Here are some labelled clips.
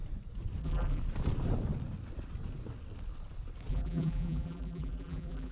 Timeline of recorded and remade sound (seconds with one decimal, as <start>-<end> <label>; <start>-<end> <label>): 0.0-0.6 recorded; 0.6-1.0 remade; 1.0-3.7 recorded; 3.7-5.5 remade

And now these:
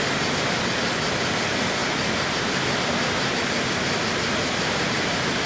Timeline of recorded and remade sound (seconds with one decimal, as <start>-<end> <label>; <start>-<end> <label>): 0.0-5.5 recorded

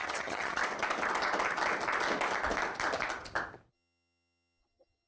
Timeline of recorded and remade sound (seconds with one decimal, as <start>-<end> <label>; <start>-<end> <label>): 0.0-0.6 remade; 0.6-3.7 recorded; 3.7-5.1 remade

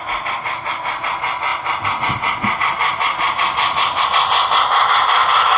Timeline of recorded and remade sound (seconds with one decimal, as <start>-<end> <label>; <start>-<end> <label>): 0.0-5.6 recorded

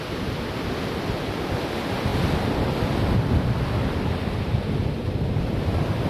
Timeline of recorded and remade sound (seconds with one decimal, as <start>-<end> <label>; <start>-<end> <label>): 0.0-6.1 recorded

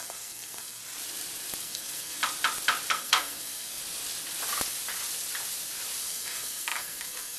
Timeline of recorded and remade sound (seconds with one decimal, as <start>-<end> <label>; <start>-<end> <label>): 0.0-0.8 remade; 0.8-1.6 recorded; 1.6-2.2 remade; 2.2-2.9 recorded; 2.9-3.8 remade; 3.8-6.0 recorded; 6.0-7.4 remade

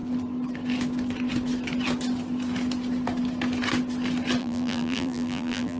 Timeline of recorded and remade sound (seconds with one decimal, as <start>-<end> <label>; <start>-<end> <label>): 0.0-4.4 recorded; 4.4-5.8 remade